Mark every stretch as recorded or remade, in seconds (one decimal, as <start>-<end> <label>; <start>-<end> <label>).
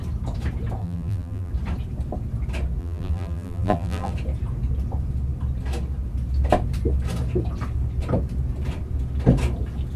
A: 0.0-0.8 recorded; 0.8-1.5 remade; 1.5-2.8 recorded; 2.8-4.1 remade; 4.1-10.0 recorded